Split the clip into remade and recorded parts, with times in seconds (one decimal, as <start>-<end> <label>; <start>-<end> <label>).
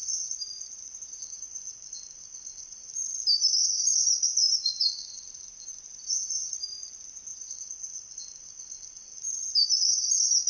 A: 0.0-1.0 remade; 1.0-2.6 recorded; 2.6-4.9 remade; 4.9-7.3 recorded; 7.3-8.1 remade; 8.1-9.1 recorded; 9.1-10.0 remade; 10.0-10.5 recorded